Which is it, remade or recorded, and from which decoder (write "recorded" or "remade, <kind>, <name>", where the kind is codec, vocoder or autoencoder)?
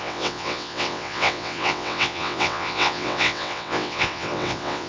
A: remade, vocoder, WaveNeXt